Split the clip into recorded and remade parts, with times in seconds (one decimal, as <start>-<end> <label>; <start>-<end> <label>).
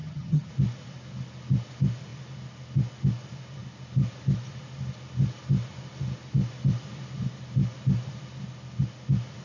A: 0.0-0.5 remade; 0.5-9.4 recorded